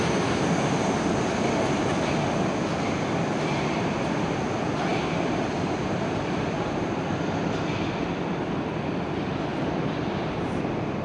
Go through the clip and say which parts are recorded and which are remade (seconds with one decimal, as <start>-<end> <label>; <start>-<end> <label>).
0.0-4.9 recorded; 4.9-9.0 remade; 9.0-9.5 recorded; 9.5-11.0 remade